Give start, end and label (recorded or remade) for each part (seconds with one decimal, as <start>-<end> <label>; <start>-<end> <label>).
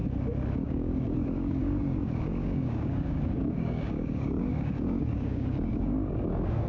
0.0-0.6 recorded; 0.6-6.7 remade